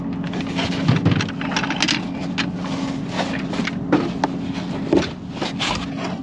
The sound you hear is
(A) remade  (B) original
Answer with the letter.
B